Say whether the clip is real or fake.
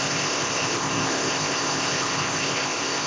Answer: fake